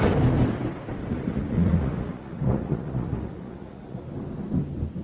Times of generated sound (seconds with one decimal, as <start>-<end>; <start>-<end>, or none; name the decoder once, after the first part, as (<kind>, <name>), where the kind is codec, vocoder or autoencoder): 1.0-4.0 (vocoder, Vocos)